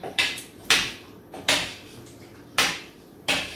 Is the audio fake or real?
fake